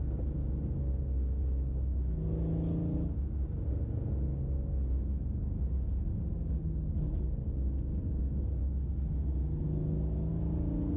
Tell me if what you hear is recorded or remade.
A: recorded